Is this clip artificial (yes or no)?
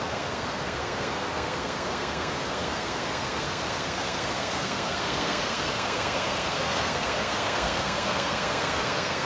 yes